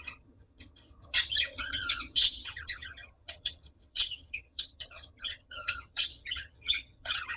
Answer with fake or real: fake